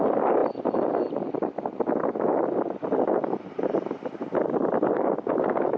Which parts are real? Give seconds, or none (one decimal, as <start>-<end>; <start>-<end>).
0.0-5.8